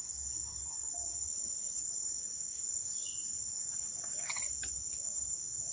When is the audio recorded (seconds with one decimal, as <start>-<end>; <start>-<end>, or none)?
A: 1.1-1.7; 4.4-4.9